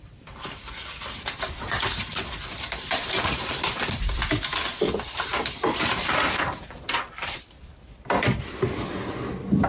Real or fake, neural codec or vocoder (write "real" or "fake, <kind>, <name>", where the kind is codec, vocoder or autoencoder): fake, vocoder, BigVGAN v2